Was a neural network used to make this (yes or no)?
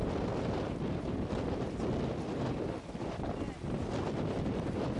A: no